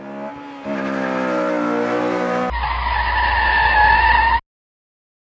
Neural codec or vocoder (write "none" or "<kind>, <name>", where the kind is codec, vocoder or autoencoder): none